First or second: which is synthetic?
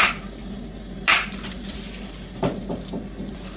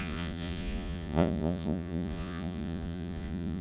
second